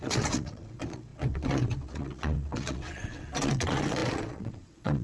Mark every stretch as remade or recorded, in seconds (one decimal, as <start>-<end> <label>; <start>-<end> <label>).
0.0-5.0 remade